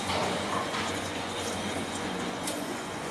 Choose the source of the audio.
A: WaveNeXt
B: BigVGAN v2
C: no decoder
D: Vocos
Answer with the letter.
D